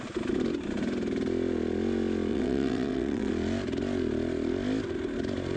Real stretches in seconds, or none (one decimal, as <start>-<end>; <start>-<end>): 0.0-2.3; 3.3-5.6

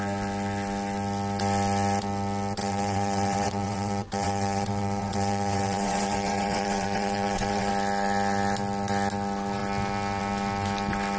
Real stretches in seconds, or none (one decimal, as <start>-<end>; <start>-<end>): 0.0-2.6; 7.7-11.2

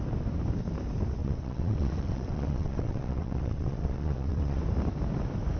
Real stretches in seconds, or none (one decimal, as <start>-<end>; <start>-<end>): 0.0-1.2; 4.6-5.6

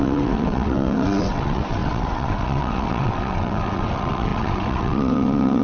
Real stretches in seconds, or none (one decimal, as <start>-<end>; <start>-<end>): none

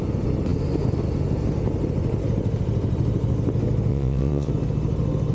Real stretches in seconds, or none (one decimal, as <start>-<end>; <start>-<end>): 0.0-3.9; 4.5-5.3

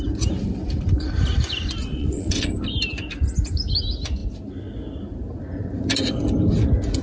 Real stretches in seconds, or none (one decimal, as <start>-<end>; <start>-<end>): 0.0-1.9; 2.5-7.0

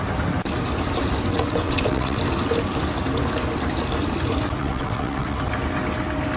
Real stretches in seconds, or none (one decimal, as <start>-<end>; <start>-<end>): 0.0-1.3; 2.2-4.6; 5.4-6.4

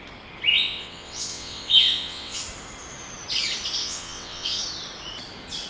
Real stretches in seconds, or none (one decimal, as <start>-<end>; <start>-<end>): 0.0-0.5; 2.4-3.8; 4.6-5.7